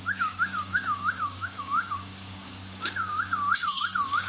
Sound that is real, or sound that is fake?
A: fake